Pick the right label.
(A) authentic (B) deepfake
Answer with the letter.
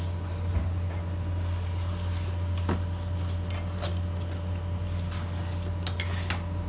A